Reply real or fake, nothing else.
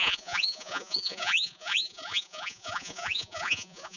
fake